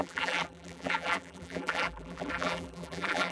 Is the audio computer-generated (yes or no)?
yes